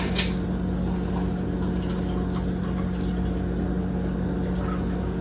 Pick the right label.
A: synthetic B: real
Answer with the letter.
B